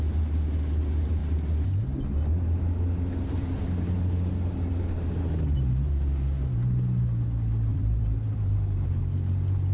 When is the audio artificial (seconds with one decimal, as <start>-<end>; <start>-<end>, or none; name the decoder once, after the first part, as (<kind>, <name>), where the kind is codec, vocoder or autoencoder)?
7.7-9.0 (vocoder, BigVGAN v2)